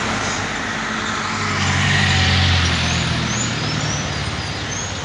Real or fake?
real